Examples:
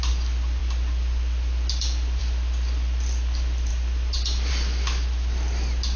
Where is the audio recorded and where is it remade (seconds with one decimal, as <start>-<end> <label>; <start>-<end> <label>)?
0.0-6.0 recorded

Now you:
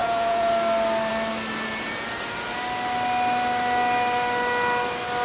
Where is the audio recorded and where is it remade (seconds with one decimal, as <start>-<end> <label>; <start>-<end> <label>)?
0.0-0.5 remade; 0.5-5.2 recorded

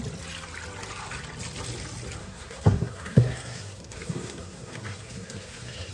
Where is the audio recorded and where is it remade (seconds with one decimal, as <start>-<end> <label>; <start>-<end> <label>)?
0.0-2.2 recorded; 2.2-5.9 remade

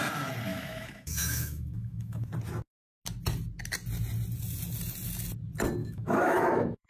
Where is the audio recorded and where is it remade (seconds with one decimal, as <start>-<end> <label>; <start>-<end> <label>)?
0.0-0.5 recorded; 0.5-2.3 remade; 2.3-5.8 recorded; 5.8-6.9 remade

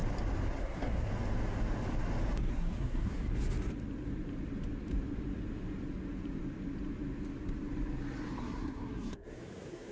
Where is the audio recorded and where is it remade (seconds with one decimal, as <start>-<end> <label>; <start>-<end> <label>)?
0.0-0.6 recorded; 0.6-1.1 remade; 1.1-2.5 recorded; 2.5-3.3 remade; 3.3-8.4 recorded; 8.4-9.9 remade

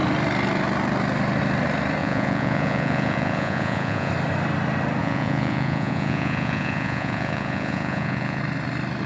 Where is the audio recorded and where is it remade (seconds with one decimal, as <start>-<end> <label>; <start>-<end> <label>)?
0.0-2.0 recorded; 2.0-4.1 remade; 4.1-5.0 recorded; 5.0-8.4 remade; 8.4-9.1 recorded

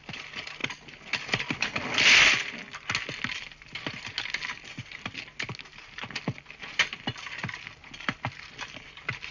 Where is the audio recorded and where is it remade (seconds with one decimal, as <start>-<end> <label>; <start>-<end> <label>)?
0.0-9.3 recorded